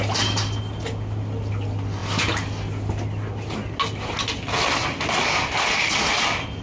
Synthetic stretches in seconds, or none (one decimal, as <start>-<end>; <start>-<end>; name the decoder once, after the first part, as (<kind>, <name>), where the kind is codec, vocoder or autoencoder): none